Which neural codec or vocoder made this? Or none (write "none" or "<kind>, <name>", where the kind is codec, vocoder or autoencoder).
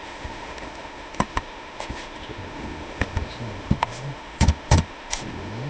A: autoencoder, DAC-VAE